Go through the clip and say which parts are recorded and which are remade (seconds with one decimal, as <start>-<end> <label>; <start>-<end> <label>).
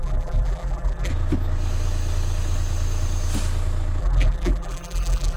0.0-1.1 remade; 1.1-4.0 recorded; 4.0-5.4 remade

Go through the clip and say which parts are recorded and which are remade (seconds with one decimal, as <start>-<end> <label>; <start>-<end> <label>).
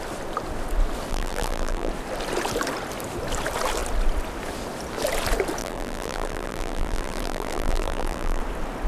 0.0-1.1 recorded; 1.1-1.9 remade; 1.9-5.6 recorded; 5.6-8.4 remade; 8.4-8.9 recorded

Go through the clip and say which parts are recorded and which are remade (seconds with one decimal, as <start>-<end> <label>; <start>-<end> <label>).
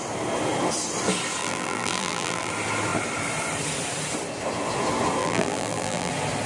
0.0-1.4 recorded; 1.4-2.5 remade; 2.5-5.2 recorded; 5.2-6.1 remade; 6.1-6.5 recorded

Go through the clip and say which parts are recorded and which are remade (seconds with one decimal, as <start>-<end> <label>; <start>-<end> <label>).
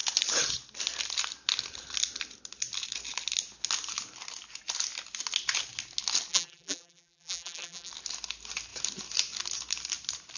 0.0-6.3 recorded; 6.3-7.9 remade; 7.9-10.4 recorded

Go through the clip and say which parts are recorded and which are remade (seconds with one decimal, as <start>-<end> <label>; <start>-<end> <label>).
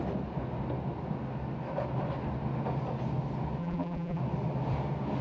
0.0-3.6 recorded; 3.6-4.2 remade; 4.2-5.2 recorded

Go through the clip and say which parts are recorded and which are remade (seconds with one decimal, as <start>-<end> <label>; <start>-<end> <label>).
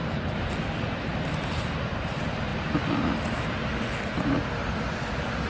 0.0-2.5 remade; 2.5-5.5 recorded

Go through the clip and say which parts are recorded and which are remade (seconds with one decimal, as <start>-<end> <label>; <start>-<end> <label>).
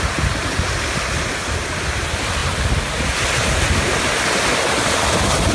0.0-5.5 recorded